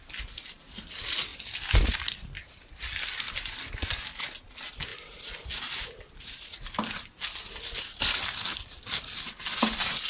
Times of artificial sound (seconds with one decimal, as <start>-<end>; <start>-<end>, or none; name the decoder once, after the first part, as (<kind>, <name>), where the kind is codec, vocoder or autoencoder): none